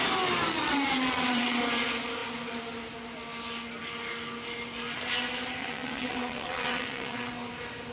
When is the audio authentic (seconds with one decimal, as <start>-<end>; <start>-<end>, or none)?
0.0-0.5; 1.6-5.6; 7.3-7.9